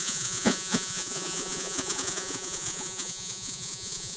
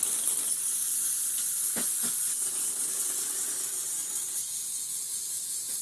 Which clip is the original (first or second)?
second